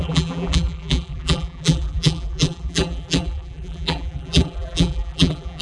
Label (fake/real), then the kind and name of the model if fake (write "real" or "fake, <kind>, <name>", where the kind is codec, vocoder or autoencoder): fake, vocoder, BigVGAN v2